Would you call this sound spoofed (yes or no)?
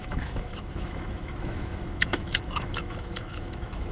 yes